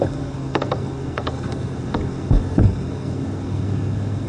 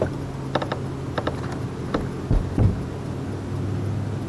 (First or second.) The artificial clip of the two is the first